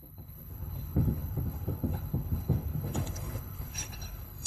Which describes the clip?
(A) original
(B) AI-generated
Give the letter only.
B